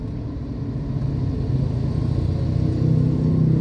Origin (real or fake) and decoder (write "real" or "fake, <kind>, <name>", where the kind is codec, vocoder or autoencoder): real